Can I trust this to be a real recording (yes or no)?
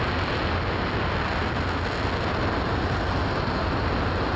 yes